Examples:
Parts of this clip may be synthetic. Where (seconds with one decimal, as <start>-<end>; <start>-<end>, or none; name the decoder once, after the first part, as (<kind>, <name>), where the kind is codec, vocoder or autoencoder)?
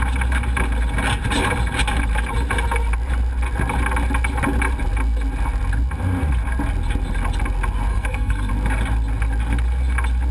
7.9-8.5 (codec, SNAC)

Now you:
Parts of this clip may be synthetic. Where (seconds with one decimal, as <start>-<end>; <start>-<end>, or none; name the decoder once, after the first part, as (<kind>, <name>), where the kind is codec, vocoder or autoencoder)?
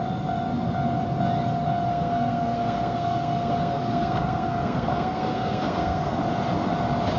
1.9-6.2 (codec, SNAC)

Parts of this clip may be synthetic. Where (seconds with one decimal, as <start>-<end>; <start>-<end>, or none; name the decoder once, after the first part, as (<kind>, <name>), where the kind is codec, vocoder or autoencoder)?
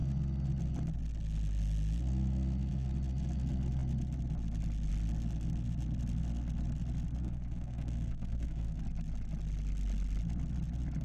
7.2-8.8 (codec, SNAC)